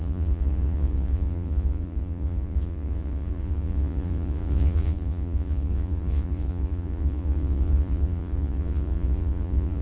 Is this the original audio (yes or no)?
no